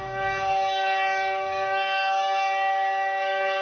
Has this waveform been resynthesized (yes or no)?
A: yes